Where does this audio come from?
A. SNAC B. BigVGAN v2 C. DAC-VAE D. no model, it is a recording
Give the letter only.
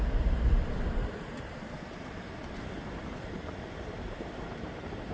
B